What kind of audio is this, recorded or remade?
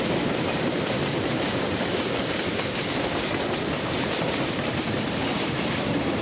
remade